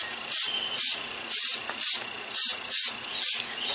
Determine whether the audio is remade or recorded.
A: remade